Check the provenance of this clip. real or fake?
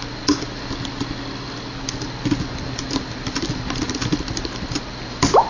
real